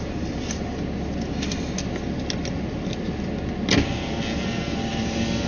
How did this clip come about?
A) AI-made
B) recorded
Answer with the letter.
B